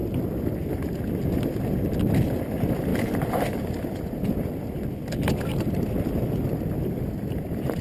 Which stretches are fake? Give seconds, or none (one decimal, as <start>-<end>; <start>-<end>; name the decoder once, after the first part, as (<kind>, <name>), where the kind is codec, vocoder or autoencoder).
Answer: none